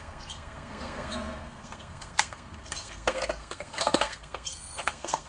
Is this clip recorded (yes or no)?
no